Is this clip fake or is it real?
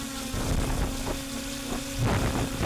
real